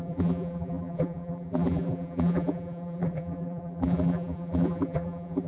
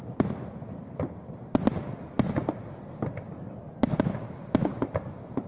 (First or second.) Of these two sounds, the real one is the second